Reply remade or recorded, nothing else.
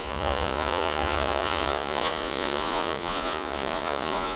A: remade